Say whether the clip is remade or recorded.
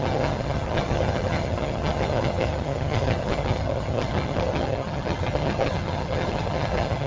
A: remade